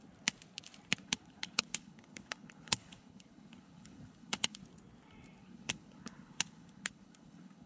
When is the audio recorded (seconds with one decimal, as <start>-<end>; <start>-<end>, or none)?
0.0-1.0; 4.6-5.4